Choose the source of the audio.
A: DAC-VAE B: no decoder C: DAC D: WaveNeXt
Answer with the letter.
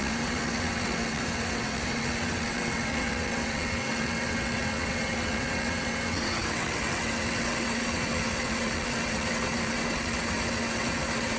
D